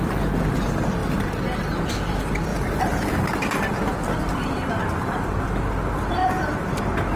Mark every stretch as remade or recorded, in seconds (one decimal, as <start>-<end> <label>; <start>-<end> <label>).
0.0-2.5 recorded; 2.5-5.2 remade; 5.2-6.2 recorded; 6.2-6.8 remade; 6.8-7.2 recorded